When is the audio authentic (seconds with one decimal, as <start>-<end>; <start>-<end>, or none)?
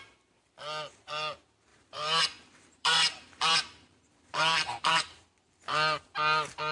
0.0-1.7; 5.2-6.7